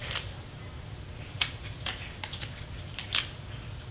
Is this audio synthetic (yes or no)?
no